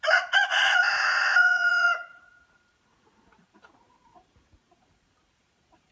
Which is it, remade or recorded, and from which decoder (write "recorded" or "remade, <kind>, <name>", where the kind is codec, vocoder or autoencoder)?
remade, vocoder, Vocos